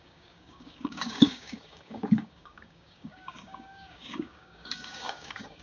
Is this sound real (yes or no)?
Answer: no